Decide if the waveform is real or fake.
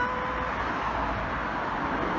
real